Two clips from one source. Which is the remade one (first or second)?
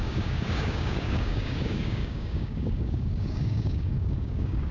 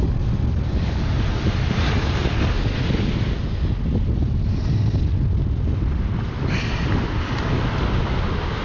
first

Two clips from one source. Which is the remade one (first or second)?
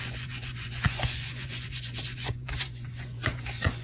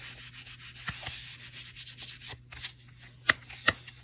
first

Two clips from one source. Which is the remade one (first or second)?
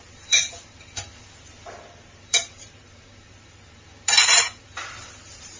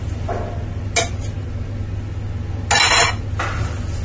first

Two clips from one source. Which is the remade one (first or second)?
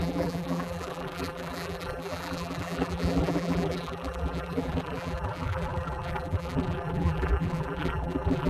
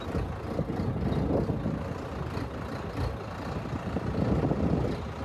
first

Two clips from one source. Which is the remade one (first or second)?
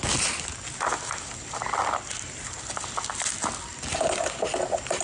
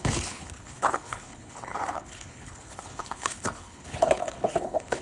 second